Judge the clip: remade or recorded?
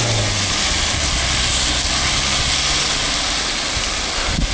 recorded